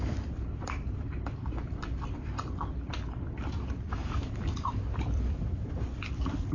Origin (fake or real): fake